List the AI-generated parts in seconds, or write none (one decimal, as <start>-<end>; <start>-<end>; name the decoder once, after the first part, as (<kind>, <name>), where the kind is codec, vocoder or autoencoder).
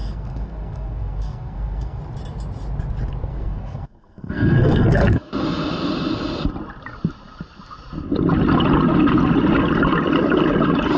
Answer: 0.0-2.0 (codec, SNAC); 3.3-5.3